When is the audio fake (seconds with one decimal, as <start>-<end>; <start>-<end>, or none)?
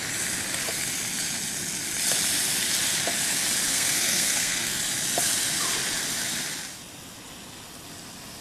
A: 3.7-4.8